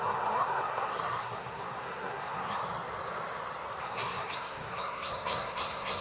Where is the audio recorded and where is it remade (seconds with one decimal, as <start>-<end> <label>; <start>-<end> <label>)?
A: 0.0-2.6 remade; 2.6-3.8 recorded; 3.8-6.0 remade